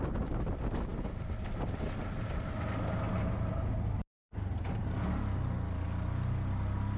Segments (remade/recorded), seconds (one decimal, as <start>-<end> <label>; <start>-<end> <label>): 0.0-7.0 recorded